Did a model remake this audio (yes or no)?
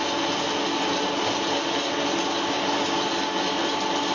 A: no